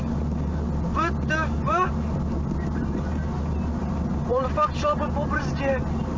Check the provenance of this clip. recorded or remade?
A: recorded